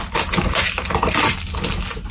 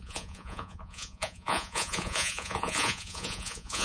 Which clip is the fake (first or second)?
second